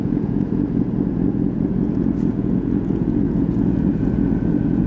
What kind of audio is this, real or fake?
fake